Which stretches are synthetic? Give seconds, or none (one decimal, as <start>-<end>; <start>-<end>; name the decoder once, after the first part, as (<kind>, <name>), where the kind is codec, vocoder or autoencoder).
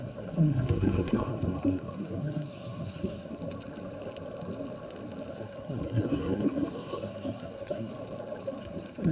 0.0-3.4 (codec, SNAC); 5.3-7.9; 8.6-9.1